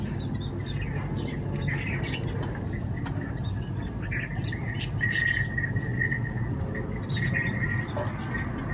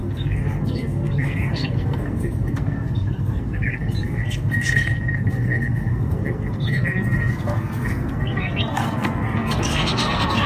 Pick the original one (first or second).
first